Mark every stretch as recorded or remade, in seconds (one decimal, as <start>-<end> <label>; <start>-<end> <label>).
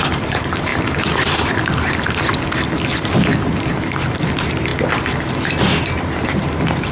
0.0-6.9 remade